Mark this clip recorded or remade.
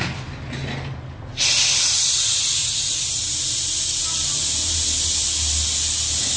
recorded